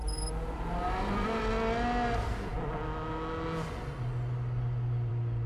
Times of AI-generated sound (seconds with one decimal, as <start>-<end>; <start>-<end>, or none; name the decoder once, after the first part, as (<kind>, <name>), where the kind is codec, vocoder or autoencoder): 0.0-1.4 (vocoder, BigVGAN v2)